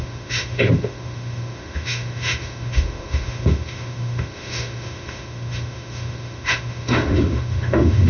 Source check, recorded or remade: remade